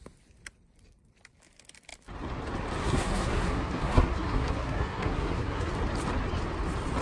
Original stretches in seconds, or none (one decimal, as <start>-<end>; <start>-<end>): 0.0-2.8; 5.7-7.0